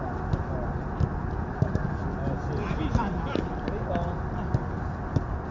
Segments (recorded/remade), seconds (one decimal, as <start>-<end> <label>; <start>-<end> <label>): 0.0-5.5 recorded